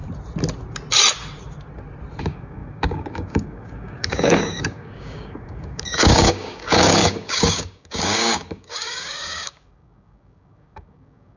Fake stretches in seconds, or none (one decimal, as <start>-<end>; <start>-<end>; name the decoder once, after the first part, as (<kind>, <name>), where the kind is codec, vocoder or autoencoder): 2.2-11.4 (codec, DAC)